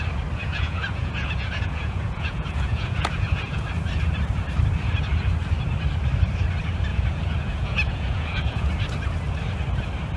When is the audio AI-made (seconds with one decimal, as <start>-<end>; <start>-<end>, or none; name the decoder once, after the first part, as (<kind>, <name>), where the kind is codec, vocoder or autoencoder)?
0.4-3.6 (vocoder, Vocos); 6.9-8.7